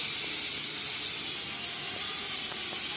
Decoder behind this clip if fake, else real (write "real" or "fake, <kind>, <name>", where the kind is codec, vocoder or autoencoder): real